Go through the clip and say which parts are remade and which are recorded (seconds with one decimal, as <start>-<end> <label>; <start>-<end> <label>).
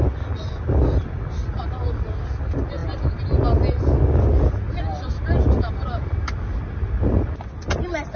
0.0-8.2 recorded